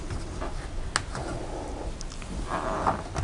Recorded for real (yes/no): yes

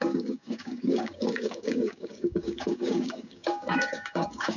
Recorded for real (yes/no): no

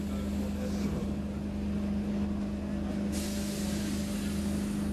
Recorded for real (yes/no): yes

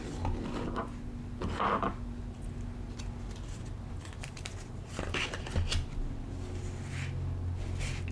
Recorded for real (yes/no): yes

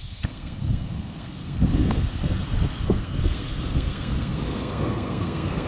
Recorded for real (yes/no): no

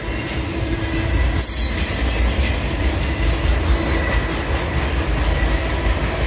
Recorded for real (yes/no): yes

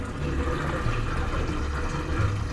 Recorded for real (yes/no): yes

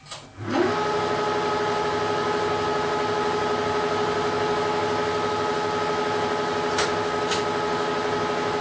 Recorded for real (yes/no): yes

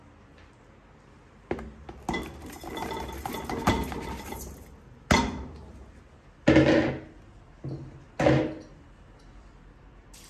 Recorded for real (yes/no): yes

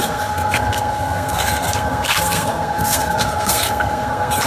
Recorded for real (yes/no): no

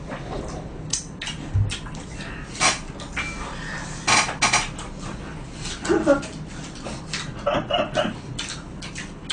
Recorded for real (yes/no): yes